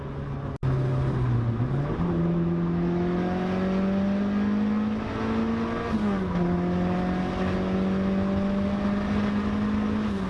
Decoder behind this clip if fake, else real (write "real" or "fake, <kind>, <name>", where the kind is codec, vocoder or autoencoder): real